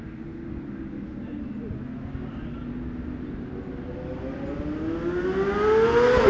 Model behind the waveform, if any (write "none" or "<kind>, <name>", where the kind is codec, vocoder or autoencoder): none